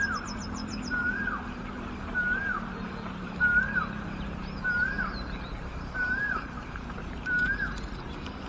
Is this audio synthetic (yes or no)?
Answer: yes